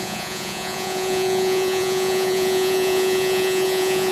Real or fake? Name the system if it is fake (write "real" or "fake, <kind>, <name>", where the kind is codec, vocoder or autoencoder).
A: fake, vocoder, Vocos